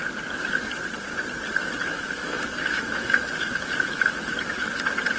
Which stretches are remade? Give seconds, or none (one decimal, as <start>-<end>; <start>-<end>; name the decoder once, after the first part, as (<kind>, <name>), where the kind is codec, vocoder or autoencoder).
1.6-4.7 (autoencoder, DAC-VAE)